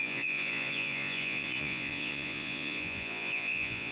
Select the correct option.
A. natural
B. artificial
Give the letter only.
B